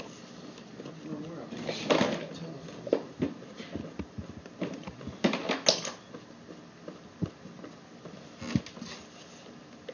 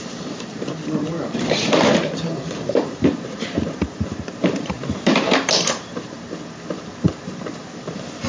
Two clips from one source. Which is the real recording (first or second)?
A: first